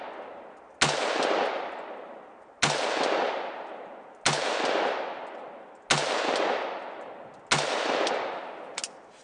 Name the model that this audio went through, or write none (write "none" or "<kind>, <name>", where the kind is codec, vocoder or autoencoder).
none